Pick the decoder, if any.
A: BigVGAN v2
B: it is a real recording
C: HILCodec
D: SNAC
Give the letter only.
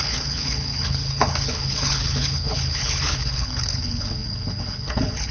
C